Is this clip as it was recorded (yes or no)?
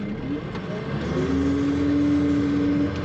yes